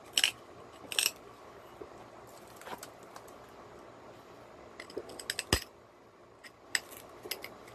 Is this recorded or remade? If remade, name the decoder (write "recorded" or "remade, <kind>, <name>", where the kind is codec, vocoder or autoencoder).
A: recorded